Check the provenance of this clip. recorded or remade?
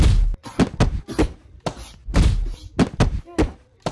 recorded